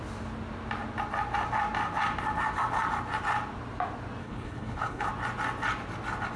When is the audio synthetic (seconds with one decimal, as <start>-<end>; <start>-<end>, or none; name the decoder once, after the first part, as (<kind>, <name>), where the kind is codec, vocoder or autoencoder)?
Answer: 4.2-5.1 (codec, HILCodec)